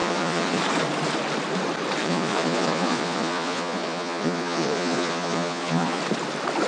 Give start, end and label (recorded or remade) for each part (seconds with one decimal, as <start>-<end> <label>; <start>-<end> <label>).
0.0-0.6 remade; 0.6-2.0 recorded; 2.0-6.0 remade; 6.0-6.7 recorded